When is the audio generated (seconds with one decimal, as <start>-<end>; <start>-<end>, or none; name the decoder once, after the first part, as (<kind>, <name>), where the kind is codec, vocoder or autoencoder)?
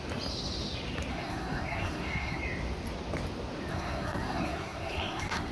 1.1-2.4 (codec, SNAC); 3.7-5.5